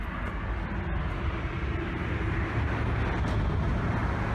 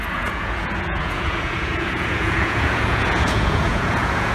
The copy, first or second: second